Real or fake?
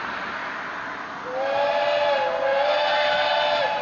real